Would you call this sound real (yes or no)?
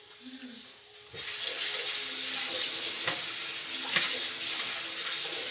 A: yes